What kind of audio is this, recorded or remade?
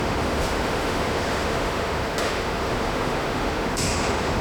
remade